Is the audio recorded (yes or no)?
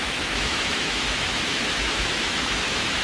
no